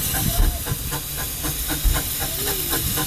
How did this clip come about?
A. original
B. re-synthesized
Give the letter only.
A